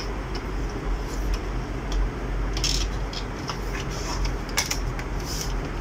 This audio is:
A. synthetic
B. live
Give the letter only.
B